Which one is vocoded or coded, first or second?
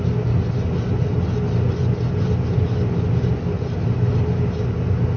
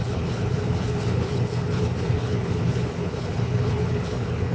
second